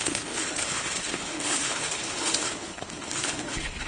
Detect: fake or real fake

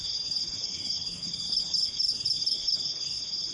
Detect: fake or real fake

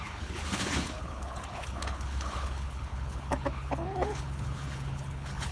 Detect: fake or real fake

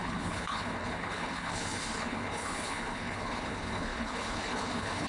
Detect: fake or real fake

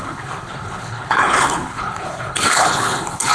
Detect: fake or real fake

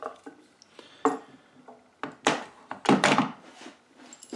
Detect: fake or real real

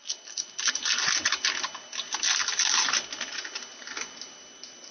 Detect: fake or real real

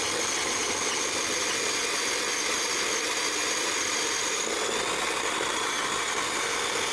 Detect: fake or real real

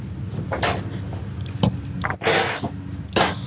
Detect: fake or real real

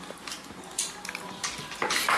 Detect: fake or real real